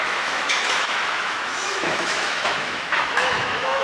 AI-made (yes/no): yes